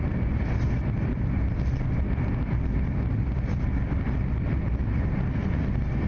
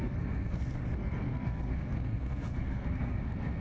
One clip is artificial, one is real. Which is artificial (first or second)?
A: second